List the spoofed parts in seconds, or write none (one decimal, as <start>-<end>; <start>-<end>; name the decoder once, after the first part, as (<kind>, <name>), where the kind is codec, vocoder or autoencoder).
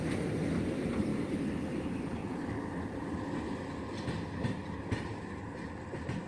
0.0-1.1 (vocoder, BigVGAN v2); 1.7-2.2; 4.3-6.3